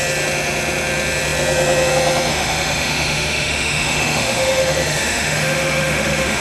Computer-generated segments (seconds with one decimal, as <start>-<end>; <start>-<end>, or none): 2.3-6.4